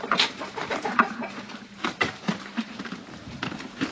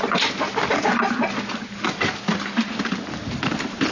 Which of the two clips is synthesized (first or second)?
first